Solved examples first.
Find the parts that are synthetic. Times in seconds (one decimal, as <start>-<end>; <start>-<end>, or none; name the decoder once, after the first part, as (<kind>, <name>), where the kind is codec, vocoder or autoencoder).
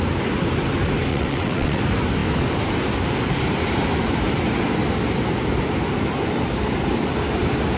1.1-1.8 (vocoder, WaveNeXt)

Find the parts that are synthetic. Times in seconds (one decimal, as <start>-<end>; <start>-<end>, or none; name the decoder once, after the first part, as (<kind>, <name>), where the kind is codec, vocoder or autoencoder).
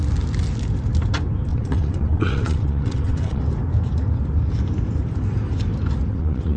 1.5-3.4 (vocoder, WaveNeXt); 6.1-6.6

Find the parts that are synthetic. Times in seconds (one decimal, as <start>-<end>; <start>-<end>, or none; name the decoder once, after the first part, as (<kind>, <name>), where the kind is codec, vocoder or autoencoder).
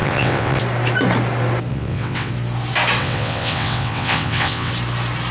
0.0-0.6 (vocoder, WaveNeXt); 1.7-2.3; 3.0-4.7